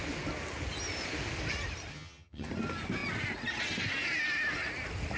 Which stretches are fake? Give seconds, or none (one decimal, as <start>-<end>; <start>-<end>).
1.9-2.5